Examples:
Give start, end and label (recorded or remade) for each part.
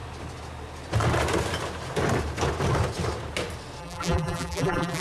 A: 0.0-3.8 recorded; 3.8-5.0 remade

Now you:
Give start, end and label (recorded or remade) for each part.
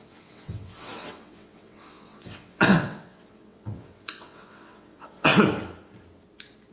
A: 0.0-5.3 remade; 5.3-6.7 recorded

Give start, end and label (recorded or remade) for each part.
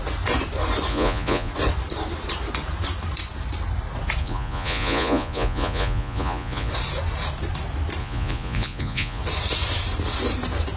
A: 0.0-0.9 recorded; 0.9-1.5 remade; 1.5-4.2 recorded; 4.2-6.7 remade; 6.7-8.0 recorded; 8.0-9.2 remade; 9.2-10.8 recorded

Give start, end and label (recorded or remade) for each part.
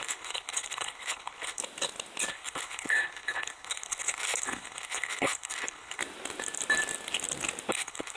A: 0.0-1.6 remade; 1.6-2.3 recorded; 2.3-6.0 remade; 6.0-7.7 recorded; 7.7-8.2 remade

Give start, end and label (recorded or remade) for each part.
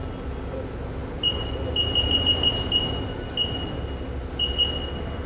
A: 0.0-5.3 recorded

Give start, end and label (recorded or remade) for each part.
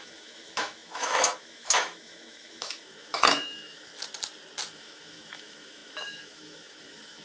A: 0.0-3.9 remade; 3.9-4.7 recorded; 4.7-7.2 remade